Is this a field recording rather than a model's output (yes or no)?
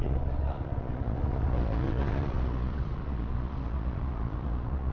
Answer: no